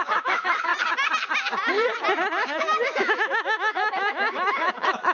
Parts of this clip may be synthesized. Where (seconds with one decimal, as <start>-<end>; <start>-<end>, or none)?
0.0-0.7; 2.4-5.1